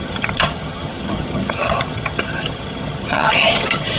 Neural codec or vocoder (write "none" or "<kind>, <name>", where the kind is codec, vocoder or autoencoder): vocoder, HiFi-GAN